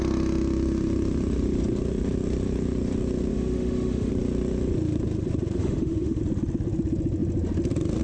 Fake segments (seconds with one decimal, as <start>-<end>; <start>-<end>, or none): 3.3-4.1; 5.6-6.2